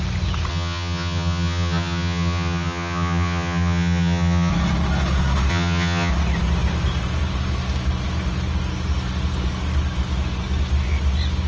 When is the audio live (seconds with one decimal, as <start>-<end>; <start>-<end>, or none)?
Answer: 0.0-0.5; 4.5-5.5; 6.1-11.5